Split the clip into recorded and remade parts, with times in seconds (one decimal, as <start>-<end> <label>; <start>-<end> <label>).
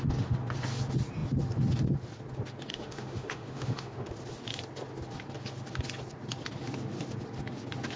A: 0.0-2.7 recorded; 2.7-4.1 remade; 4.1-8.0 recorded